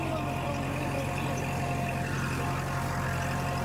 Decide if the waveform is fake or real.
real